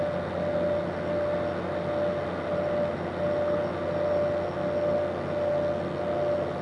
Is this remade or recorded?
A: recorded